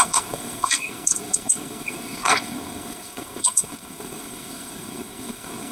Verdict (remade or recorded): remade